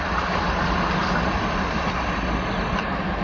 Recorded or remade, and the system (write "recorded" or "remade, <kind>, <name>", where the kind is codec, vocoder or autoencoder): recorded